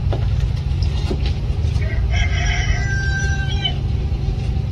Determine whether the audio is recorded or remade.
remade